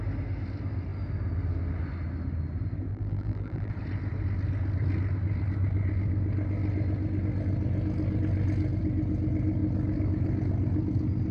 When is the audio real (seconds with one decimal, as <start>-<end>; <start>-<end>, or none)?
0.0-2.9; 3.7-11.3

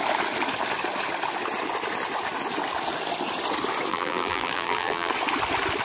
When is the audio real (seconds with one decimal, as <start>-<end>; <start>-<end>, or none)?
0.0-3.9; 5.1-5.8

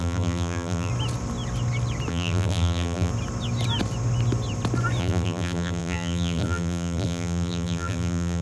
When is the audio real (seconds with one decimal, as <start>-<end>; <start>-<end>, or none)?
0.9-2.1; 3.1-5.0